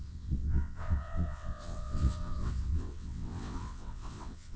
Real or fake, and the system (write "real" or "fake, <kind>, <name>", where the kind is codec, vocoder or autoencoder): fake, vocoder, WaveNeXt